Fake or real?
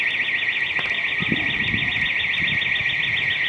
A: real